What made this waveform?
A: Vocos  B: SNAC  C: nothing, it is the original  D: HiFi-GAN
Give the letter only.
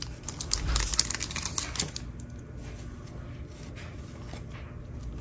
C